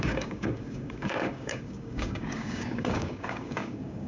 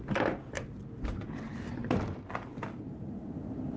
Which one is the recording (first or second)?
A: second